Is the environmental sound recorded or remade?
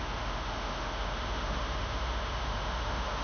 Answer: remade